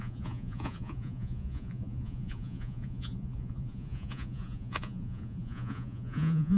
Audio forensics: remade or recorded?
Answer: remade